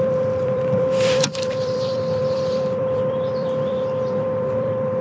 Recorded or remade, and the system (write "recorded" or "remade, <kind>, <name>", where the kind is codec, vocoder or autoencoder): remade, vocoder, BigVGAN v2